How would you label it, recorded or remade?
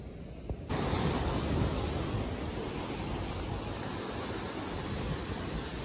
recorded